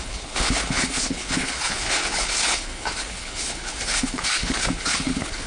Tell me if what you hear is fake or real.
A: fake